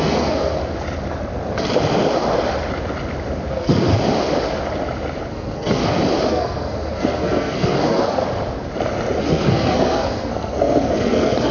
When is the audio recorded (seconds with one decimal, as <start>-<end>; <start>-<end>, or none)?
0.6-3.5; 3.9-5.3; 5.8-6.3; 8.2-9.2